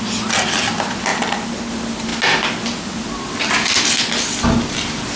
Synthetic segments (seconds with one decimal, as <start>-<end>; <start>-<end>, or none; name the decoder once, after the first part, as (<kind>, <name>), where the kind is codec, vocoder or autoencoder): none